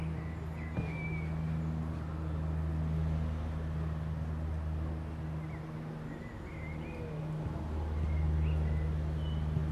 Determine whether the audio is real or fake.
real